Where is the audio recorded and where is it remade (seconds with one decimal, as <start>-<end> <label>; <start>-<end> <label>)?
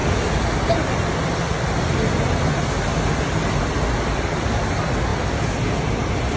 0.0-6.4 recorded